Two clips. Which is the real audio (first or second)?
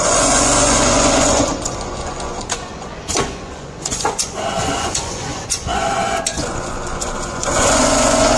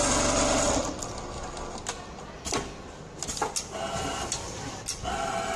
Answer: second